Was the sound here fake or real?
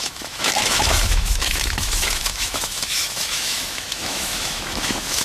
fake